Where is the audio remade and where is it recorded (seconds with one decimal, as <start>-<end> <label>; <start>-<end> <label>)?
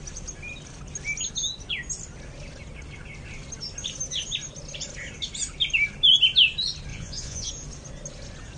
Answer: 0.0-6.9 recorded; 6.9-7.5 remade; 7.5-8.6 recorded